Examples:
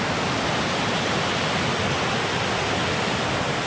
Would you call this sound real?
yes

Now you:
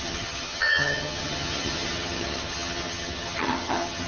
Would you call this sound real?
no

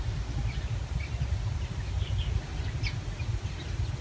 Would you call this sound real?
yes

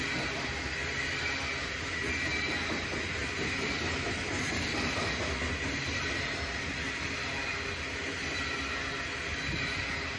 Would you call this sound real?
yes